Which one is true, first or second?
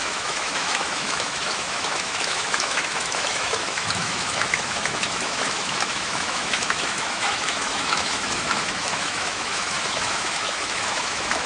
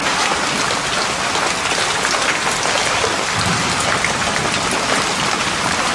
second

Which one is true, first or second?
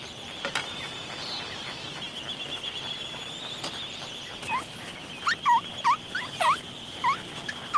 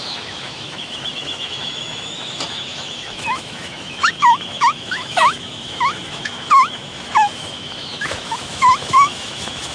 first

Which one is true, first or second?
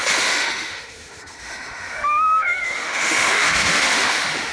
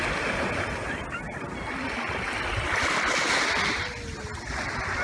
second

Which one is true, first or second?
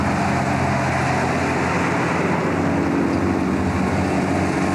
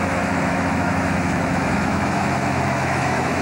first